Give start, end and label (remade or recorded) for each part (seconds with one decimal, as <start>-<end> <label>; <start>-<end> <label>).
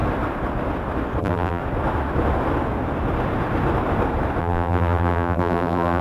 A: 0.0-1.2 recorded; 1.2-1.6 remade; 1.6-4.4 recorded; 4.4-6.0 remade